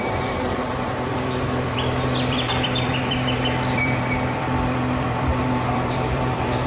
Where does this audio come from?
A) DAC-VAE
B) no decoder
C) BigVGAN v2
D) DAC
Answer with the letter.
C